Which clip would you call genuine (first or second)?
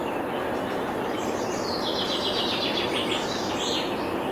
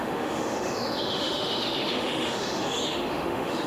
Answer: first